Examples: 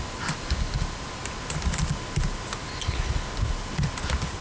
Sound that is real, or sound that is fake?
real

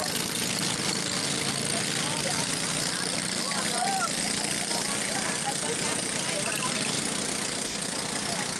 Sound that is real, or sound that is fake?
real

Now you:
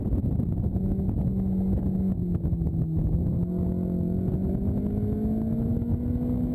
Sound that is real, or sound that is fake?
real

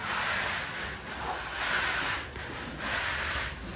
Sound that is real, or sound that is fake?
real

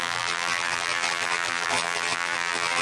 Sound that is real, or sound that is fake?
fake